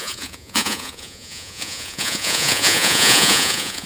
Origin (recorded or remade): remade